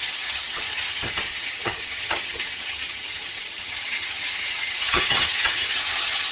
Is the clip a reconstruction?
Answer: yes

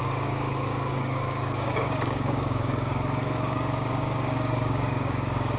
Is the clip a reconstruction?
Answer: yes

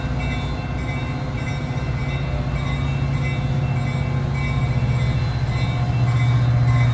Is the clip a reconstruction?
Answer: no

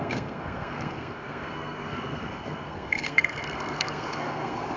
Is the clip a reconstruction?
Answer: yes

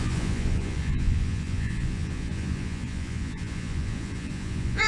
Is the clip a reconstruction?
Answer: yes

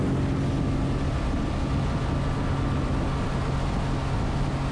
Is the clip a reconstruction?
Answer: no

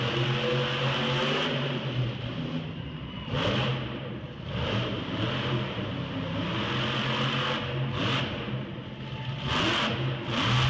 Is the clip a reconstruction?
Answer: no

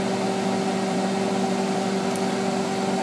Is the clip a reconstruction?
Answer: no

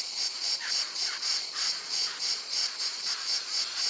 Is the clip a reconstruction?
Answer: yes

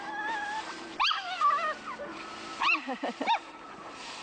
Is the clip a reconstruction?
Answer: yes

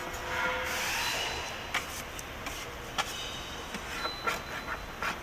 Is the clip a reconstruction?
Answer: no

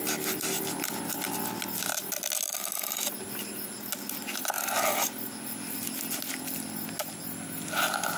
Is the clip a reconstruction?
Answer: no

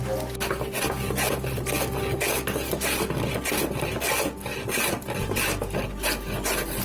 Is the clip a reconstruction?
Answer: no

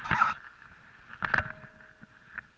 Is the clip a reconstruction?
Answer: no